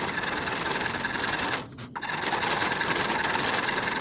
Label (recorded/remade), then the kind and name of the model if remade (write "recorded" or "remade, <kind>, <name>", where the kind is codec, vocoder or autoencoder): recorded